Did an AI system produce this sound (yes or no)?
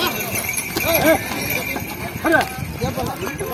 no